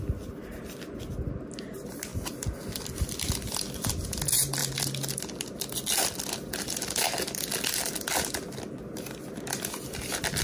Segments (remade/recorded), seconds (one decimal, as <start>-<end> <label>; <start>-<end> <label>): 0.0-10.4 recorded